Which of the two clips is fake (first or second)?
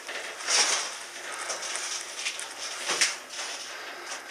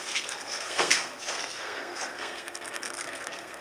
second